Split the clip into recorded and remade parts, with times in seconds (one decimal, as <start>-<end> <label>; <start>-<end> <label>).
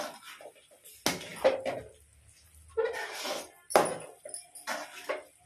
0.0-5.5 recorded